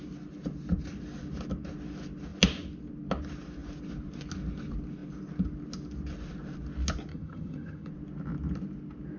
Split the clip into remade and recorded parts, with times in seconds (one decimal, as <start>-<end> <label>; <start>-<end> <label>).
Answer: 0.0-7.1 recorded; 7.1-7.9 remade; 7.9-9.2 recorded